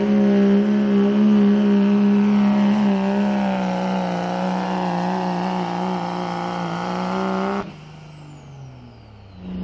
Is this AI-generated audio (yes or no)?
no